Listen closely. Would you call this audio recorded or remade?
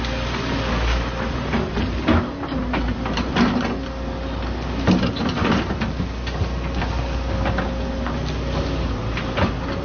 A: recorded